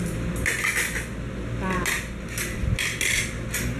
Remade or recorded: recorded